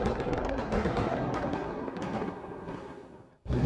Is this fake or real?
fake